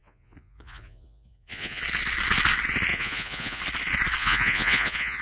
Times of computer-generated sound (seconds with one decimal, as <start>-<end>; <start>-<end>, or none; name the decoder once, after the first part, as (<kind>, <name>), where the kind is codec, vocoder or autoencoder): 0.0-1.8 (vocoder, Vocos); 2.9-3.6; 4.2-5.2